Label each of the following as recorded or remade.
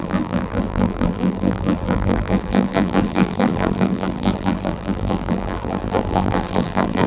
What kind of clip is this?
remade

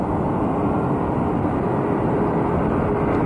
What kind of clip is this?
recorded